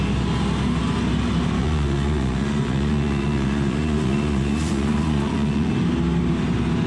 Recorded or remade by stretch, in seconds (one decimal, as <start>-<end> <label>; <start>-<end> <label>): 0.0-1.6 recorded; 1.6-5.7 remade; 5.7-6.9 recorded